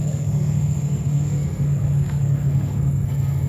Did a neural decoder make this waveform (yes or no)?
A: yes